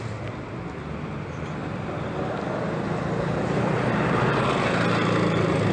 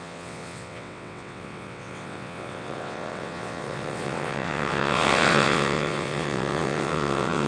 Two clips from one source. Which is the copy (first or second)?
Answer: second